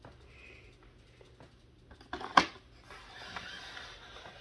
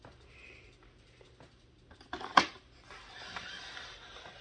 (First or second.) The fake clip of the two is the second